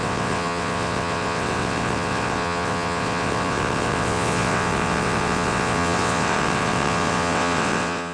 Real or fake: fake